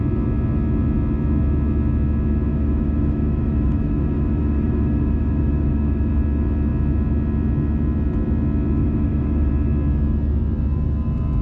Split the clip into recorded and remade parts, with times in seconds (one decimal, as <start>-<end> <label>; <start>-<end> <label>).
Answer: 0.0-2.5 recorded; 2.5-6.1 remade; 6.1-8.8 recorded; 8.8-9.5 remade; 9.5-11.4 recorded